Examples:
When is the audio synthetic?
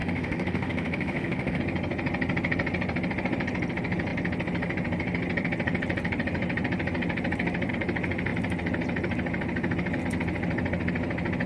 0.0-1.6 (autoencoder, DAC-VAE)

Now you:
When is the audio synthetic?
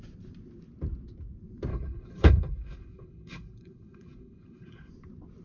1.7-4.9 (codec, HILCodec)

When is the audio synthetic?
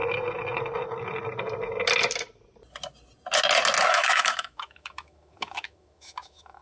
3.9-6.6 (autoencoder, DAC-VAE)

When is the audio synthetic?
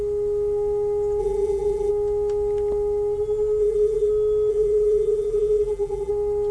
1.2-1.9 (vocoder, BigVGAN v2); 3.6-4.1; 4.5-6.1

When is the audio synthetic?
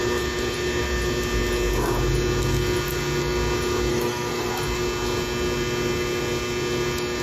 3.9-4.5 (codec, SNAC)